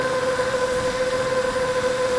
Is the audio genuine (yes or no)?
no